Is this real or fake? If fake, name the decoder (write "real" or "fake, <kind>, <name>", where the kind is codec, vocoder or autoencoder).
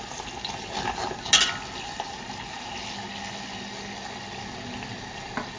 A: real